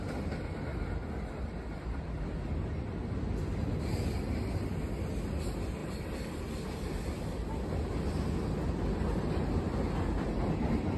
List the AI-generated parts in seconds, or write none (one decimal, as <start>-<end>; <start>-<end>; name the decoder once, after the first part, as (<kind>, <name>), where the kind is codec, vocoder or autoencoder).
none